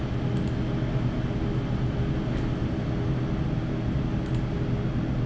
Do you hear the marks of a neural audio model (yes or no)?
no